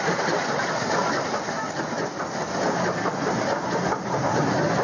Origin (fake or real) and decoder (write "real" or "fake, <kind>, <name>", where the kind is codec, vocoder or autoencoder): real